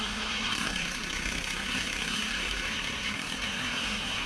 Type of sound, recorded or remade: remade